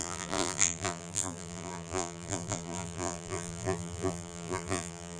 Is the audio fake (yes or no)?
yes